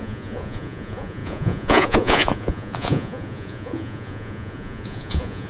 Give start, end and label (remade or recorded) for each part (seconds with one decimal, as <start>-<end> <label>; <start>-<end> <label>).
0.0-5.5 remade